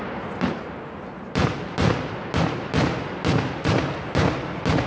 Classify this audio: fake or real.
real